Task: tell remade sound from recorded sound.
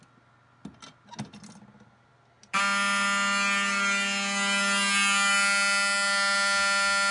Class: recorded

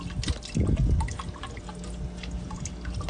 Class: recorded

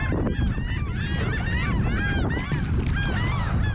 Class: recorded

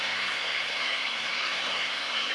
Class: remade